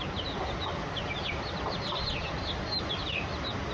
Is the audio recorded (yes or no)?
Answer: yes